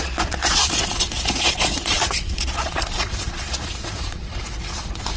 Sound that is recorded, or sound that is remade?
remade